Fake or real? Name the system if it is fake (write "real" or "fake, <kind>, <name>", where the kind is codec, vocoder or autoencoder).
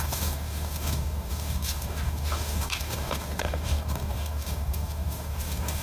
fake, codec, DAC